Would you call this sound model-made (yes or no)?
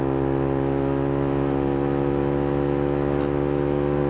no